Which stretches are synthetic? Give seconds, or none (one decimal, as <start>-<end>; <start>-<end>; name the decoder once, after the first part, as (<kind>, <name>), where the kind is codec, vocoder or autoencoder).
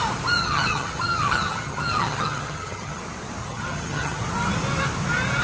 0.4-3.0 (vocoder, HiFi-GAN); 3.4-4.2